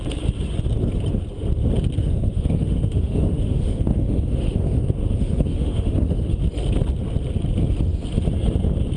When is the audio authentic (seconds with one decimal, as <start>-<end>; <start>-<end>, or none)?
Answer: 0.0-2.0; 6.4-9.0